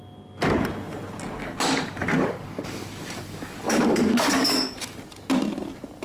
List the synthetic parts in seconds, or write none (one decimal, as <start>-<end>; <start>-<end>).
1.4-5.0